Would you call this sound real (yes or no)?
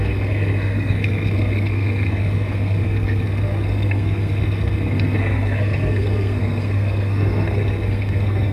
no